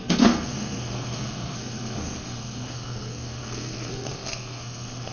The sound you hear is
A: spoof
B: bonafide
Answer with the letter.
A